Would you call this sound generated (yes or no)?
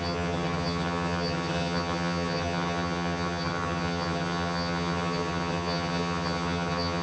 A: yes